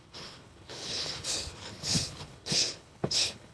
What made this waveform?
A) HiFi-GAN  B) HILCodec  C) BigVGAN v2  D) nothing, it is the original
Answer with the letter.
B